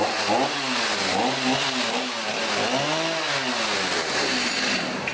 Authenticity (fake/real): real